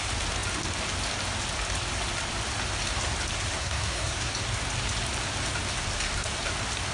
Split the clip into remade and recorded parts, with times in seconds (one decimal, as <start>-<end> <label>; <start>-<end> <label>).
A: 0.0-3.6 recorded; 3.6-4.3 remade; 4.3-6.9 recorded